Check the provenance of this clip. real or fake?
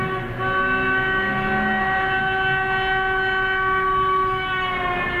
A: real